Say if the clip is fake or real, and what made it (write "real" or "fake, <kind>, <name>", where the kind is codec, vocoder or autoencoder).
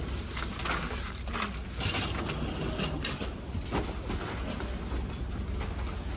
real